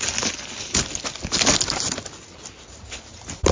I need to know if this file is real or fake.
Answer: real